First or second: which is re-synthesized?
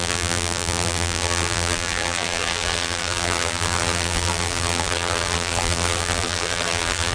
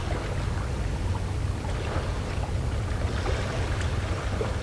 first